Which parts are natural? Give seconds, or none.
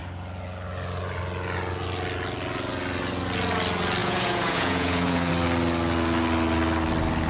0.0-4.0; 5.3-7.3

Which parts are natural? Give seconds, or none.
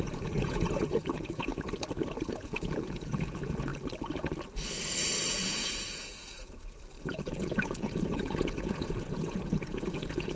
1.5-2.1; 3.7-5.3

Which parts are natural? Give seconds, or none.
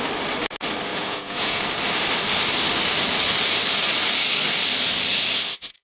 0.0-0.9; 1.6-5.8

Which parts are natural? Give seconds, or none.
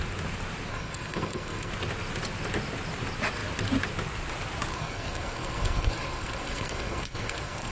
0.0-0.7; 1.7-4.7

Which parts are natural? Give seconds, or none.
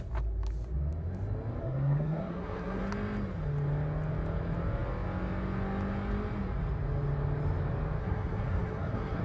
0.0-1.6; 2.8-8.0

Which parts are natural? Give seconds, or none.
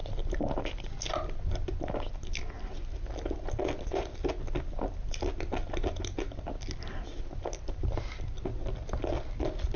0.6-5.6; 8.5-9.8